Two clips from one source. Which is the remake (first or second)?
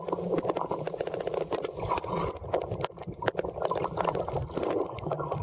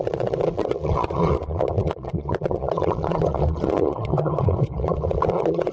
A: second